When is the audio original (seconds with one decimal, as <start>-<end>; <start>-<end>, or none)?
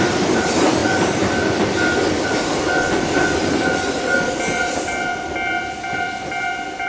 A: 0.0-0.8; 2.6-6.9